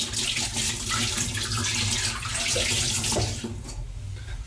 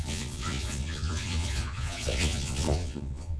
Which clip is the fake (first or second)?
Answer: second